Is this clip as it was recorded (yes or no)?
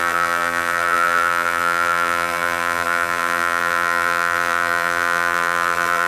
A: no